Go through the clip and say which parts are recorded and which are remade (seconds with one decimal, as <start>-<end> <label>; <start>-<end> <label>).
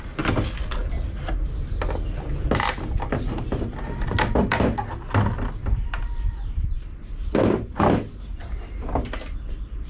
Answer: 0.0-9.9 recorded